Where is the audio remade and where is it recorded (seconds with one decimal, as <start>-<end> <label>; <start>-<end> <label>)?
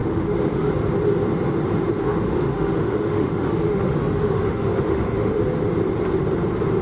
0.0-0.7 remade; 0.7-2.0 recorded; 2.0-5.4 remade; 5.4-6.8 recorded